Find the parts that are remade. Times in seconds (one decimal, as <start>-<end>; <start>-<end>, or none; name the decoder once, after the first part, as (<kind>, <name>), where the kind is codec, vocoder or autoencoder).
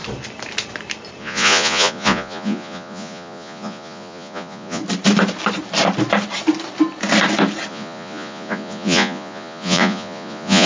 1.2-4.8 (vocoder, Vocos); 7.7-10.7